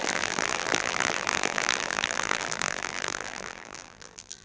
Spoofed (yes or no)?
yes